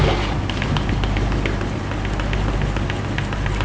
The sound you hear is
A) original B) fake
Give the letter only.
A